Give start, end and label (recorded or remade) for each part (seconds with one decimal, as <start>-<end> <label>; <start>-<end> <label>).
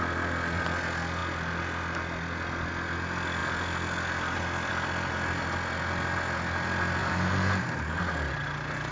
0.0-7.0 recorded; 7.0-8.0 remade; 8.0-8.9 recorded